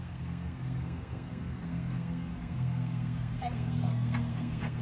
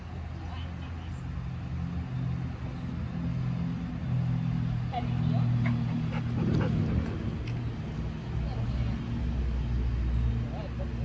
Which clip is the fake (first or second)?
first